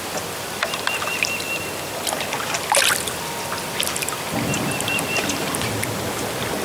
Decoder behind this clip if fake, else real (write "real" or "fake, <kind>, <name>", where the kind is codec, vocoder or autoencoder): real